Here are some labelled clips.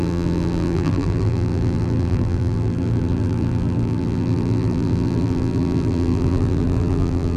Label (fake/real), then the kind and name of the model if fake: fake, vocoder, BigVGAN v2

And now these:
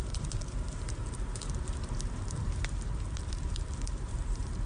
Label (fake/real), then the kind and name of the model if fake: fake, vocoder, BigVGAN v2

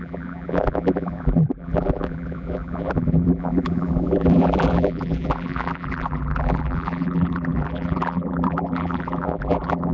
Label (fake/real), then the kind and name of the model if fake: fake, vocoder, BigVGAN v2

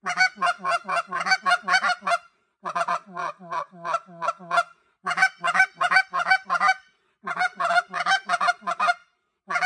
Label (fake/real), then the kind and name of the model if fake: real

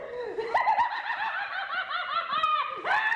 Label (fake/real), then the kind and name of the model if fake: real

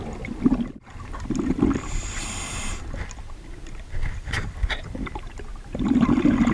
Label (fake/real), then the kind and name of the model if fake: real